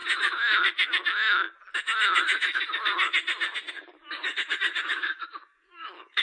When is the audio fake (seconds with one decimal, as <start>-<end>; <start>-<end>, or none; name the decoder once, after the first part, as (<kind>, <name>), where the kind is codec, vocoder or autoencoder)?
3.7-6.2 (codec, DAC)